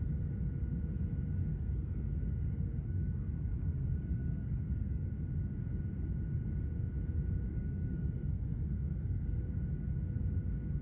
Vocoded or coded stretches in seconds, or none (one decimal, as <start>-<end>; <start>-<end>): 1.5-5.1; 7.5-9.4